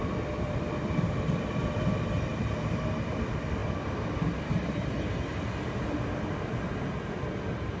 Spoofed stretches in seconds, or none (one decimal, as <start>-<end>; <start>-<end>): none